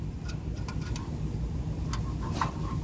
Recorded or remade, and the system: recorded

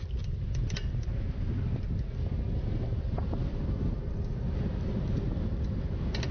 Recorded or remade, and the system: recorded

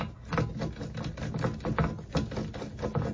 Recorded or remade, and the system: recorded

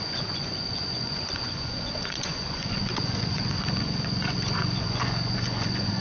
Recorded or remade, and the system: remade, vocoder, Vocos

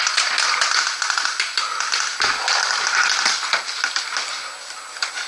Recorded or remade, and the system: recorded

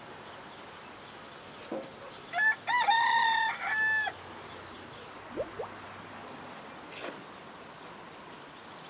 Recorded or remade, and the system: recorded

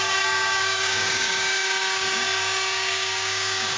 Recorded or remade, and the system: remade, codec, DAC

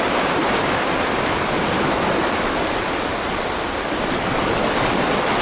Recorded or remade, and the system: recorded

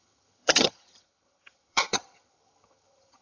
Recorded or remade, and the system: remade, vocoder, HiFi-GAN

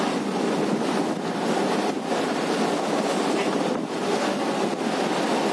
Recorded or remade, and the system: recorded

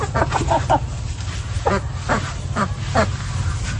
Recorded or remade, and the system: recorded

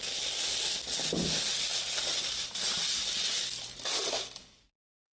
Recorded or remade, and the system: recorded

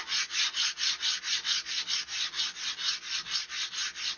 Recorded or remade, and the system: recorded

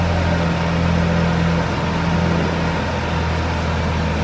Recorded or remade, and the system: recorded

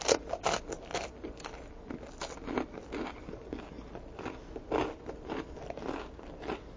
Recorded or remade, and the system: recorded